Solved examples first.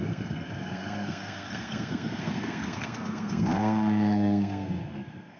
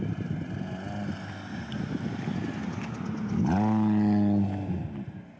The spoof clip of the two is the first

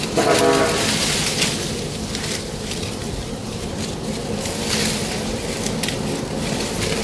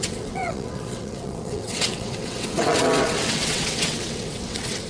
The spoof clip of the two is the second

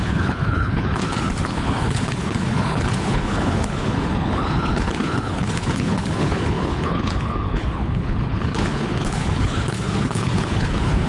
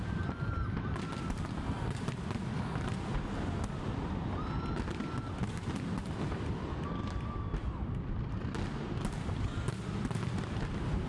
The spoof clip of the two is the first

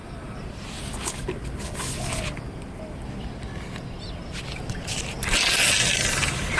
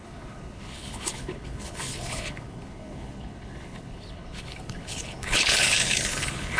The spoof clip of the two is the second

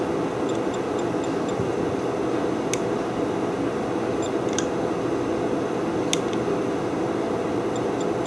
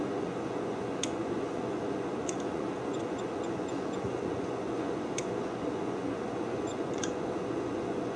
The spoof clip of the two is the second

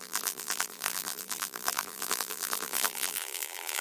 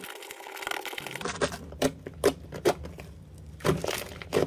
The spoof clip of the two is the first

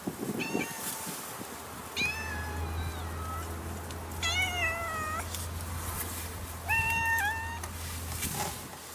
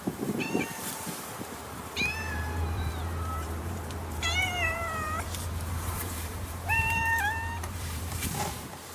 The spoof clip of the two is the second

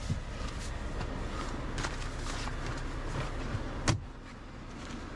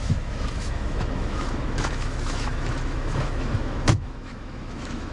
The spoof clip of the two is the second